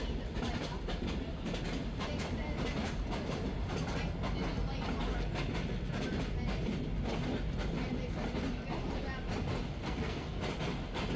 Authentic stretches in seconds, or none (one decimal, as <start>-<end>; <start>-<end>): 0.0-9.8; 10.4-11.2